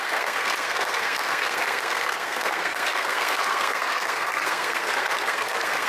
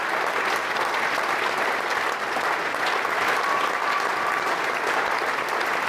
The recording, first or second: second